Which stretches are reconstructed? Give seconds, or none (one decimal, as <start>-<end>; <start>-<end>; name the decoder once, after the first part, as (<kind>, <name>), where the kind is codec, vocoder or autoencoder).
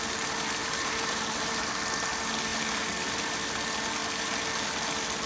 0.6-1.7 (vocoder, BigVGAN v2)